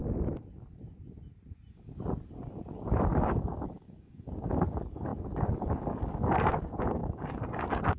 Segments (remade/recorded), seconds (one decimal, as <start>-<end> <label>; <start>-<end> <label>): 0.0-3.2 recorded; 3.2-8.0 remade